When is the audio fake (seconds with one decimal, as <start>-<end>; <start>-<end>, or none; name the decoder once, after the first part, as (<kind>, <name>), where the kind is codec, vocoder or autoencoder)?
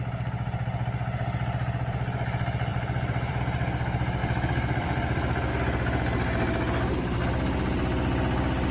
2.7-3.4 (vocoder, BigVGAN v2); 4.2-5.5